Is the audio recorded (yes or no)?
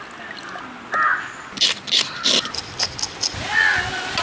yes